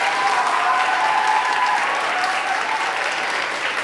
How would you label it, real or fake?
fake